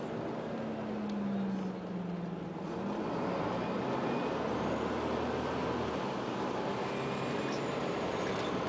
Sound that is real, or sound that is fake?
real